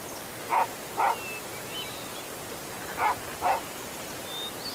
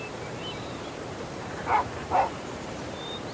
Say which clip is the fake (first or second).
second